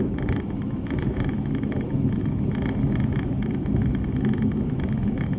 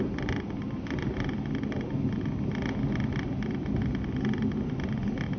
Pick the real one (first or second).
second